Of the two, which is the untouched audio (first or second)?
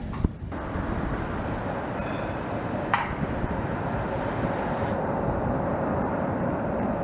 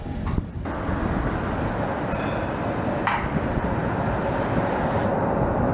second